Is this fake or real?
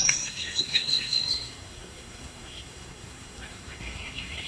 fake